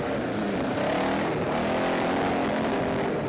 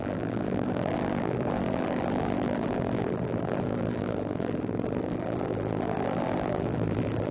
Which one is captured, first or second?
first